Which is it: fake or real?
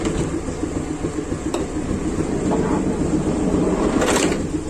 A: real